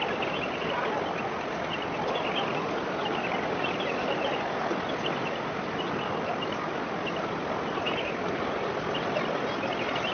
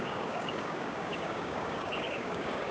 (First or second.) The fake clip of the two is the second